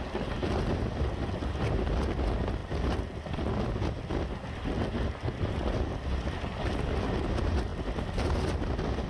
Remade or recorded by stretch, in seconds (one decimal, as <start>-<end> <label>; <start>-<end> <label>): 0.0-9.1 recorded